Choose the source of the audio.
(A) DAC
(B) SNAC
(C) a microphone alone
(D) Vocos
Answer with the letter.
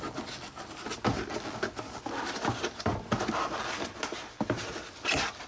C